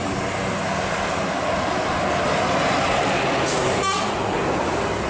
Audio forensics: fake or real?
real